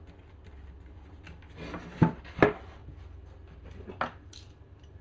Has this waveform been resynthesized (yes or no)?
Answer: no